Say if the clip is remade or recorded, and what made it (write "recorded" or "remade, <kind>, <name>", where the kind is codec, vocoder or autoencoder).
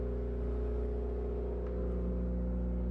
recorded